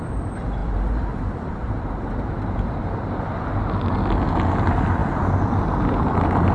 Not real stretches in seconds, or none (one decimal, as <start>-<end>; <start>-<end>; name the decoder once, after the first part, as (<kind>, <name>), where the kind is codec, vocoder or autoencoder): 0.6-3.2 (vocoder, BigVGAN v2)